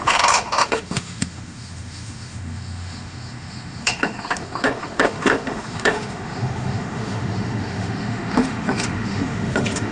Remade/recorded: remade